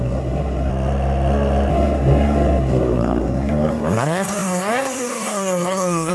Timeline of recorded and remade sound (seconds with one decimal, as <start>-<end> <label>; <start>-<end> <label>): 0.0-0.7 remade; 0.7-1.7 recorded; 1.7-6.1 remade